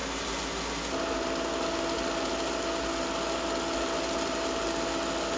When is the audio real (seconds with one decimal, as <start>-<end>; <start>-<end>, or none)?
0.0-5.4